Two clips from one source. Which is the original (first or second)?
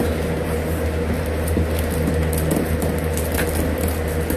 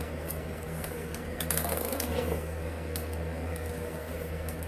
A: first